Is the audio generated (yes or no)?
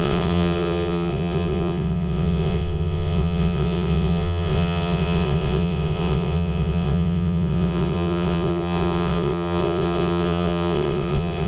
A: yes